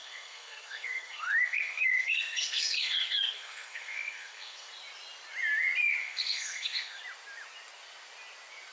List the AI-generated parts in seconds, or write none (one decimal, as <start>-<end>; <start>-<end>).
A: 0.0-4.7; 6.0-7.0